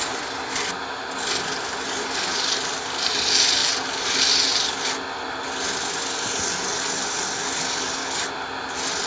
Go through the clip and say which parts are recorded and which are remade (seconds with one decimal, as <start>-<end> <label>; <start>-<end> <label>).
0.0-9.1 recorded

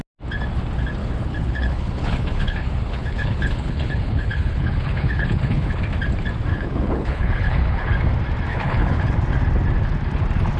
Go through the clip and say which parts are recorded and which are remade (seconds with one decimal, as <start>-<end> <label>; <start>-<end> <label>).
0.0-1.0 recorded; 1.0-5.8 remade; 5.8-6.5 recorded; 6.5-7.9 remade; 7.9-8.5 recorded; 8.5-9.1 remade; 9.1-10.6 recorded